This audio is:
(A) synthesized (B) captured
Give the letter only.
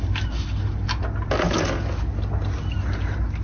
B